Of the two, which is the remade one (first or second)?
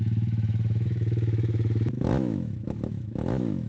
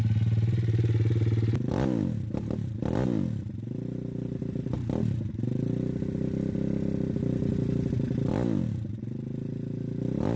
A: first